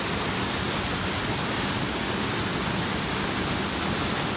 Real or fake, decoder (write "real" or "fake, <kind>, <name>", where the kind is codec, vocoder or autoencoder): real